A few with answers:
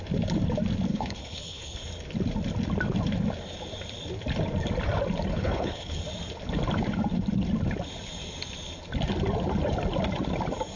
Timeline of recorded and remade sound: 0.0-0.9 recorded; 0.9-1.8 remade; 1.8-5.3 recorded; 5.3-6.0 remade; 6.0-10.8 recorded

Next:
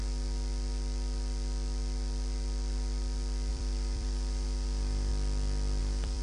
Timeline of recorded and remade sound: 0.0-3.5 recorded; 3.5-5.1 remade; 5.1-5.8 recorded; 5.8-6.2 remade

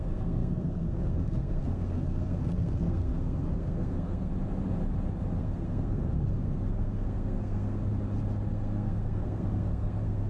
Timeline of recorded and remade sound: 0.0-4.3 remade; 4.3-5.4 recorded; 5.4-7.8 remade; 7.8-8.5 recorded; 8.5-10.3 remade

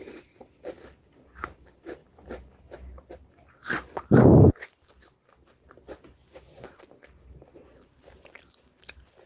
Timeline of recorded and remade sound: 0.0-9.3 recorded

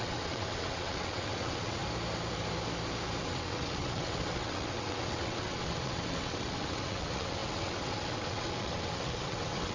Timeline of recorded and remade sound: 0.0-1.8 remade; 1.8-3.2 recorded; 3.2-9.7 remade

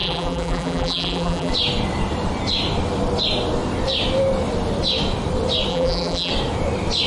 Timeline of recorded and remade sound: 0.0-1.5 remade; 1.5-5.7 recorded; 5.7-6.3 remade; 6.3-7.1 recorded

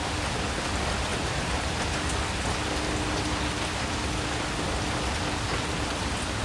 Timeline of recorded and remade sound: 0.0-1.1 recorded; 1.1-2.1 remade; 2.1-6.4 recorded